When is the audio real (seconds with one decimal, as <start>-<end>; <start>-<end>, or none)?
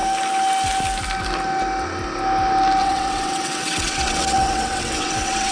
0.0-2.8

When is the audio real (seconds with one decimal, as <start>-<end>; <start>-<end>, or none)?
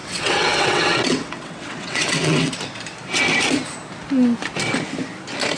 2.5-5.6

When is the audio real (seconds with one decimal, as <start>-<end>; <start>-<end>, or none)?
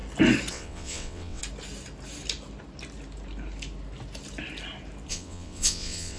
0.0-0.5; 1.4-5.1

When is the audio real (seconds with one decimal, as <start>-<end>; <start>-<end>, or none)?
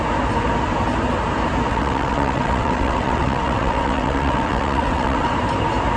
0.0-1.7; 5.3-6.0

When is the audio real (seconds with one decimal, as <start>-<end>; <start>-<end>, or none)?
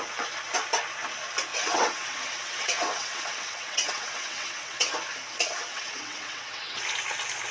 0.0-1.5; 4.9-5.7; 6.8-7.5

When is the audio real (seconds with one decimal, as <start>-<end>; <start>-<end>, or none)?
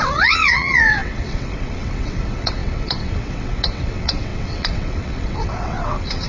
none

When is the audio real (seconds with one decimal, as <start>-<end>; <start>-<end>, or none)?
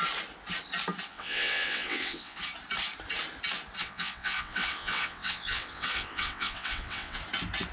0.0-1.1; 2.4-3.8; 7.2-7.7